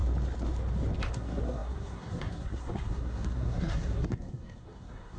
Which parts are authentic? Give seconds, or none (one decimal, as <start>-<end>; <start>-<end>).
0.0-1.1